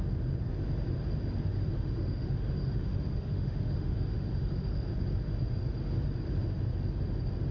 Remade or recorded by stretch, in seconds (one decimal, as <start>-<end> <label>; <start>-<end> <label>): 0.0-1.5 recorded; 1.5-4.9 remade; 4.9-7.5 recorded

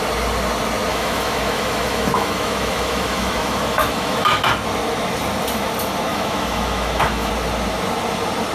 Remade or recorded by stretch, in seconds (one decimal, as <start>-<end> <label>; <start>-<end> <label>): 0.0-0.9 recorded; 0.9-4.5 remade; 4.5-6.1 recorded; 6.1-7.3 remade; 7.3-8.5 recorded

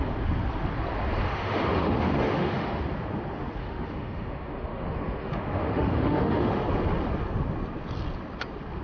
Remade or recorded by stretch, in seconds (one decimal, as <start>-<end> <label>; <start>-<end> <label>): 0.0-1.3 recorded; 1.3-2.8 remade; 2.8-3.6 recorded; 3.6-6.6 remade; 6.6-8.8 recorded

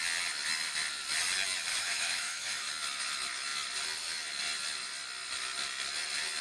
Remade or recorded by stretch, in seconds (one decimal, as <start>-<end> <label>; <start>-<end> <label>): 0.0-1.7 recorded; 1.7-2.7 remade; 2.7-6.4 recorded